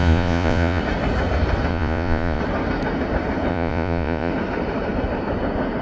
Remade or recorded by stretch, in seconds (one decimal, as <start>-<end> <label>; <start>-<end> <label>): 0.0-0.8 remade; 0.8-1.7 recorded; 1.7-2.4 remade; 2.4-3.5 recorded; 3.5-4.3 remade; 4.3-5.8 recorded